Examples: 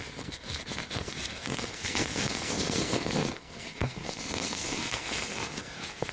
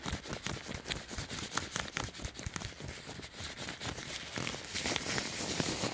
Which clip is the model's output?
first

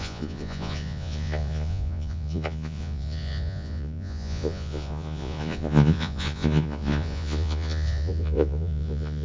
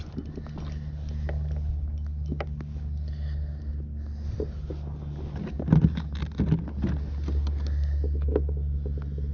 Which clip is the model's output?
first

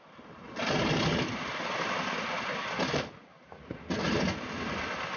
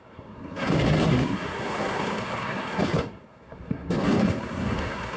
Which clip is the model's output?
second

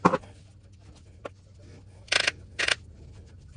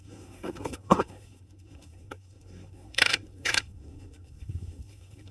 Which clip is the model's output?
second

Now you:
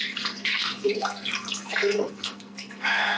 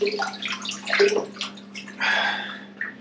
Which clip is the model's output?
first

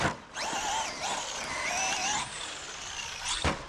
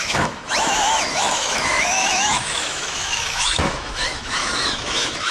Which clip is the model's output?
second